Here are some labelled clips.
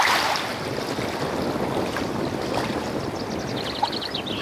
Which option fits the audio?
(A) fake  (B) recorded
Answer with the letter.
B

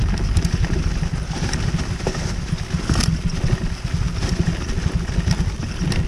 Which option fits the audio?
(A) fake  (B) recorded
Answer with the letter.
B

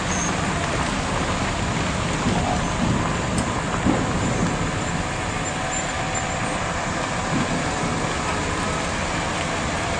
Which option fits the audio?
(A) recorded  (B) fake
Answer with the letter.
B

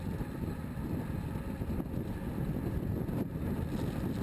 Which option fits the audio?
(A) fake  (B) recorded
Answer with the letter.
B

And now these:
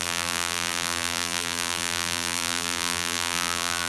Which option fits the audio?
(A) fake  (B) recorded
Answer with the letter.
A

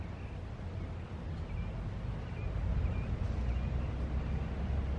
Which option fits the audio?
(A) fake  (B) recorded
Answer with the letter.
B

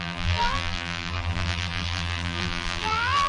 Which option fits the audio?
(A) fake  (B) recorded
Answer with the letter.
A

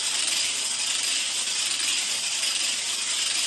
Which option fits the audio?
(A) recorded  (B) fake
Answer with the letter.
A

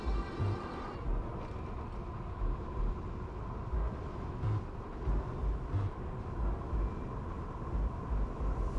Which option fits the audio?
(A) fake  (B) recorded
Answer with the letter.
B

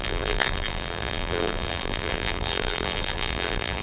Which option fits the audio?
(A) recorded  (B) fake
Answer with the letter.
B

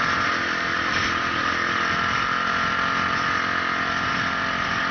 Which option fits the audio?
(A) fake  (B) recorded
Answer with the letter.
B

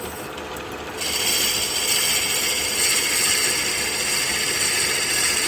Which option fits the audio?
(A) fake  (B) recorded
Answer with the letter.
B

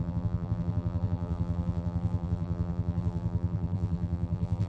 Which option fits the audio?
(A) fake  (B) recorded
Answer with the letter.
A